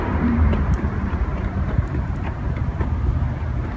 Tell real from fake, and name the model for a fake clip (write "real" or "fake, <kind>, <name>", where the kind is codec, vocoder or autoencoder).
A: fake, vocoder, BigVGAN v2